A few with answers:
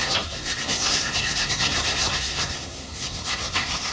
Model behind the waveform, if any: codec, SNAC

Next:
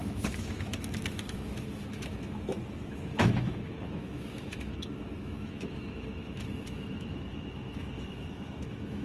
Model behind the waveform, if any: autoencoder, DAC-VAE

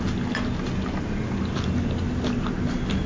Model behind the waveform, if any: none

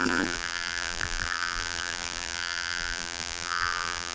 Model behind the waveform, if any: vocoder, BigVGAN v2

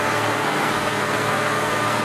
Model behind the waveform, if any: codec, SNAC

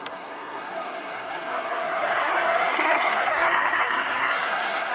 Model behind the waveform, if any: codec, SNAC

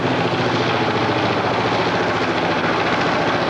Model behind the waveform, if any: none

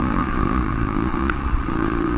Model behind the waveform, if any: vocoder, Vocos